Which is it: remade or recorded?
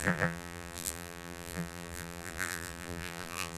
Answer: remade